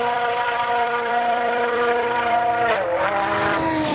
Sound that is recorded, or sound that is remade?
remade